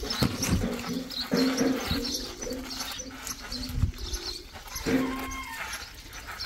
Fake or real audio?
real